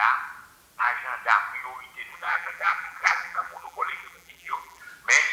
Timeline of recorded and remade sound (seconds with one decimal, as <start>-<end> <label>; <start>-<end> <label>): 0.0-2.1 recorded; 2.1-4.8 remade; 4.8-5.3 recorded